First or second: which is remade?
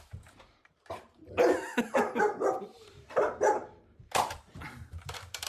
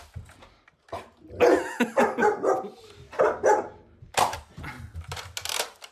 first